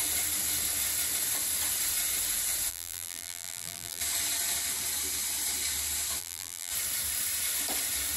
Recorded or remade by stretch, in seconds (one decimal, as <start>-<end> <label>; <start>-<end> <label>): 0.0-2.7 recorded; 2.7-4.0 remade; 4.0-6.2 recorded; 6.2-6.7 remade; 6.7-8.2 recorded